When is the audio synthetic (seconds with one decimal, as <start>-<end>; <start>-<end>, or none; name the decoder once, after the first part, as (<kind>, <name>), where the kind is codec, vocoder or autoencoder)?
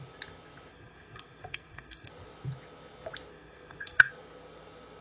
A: 0.7-2.1 (codec, SNAC); 3.3-4.1